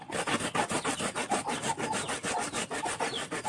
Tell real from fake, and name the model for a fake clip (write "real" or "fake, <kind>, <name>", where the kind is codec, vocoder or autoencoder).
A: real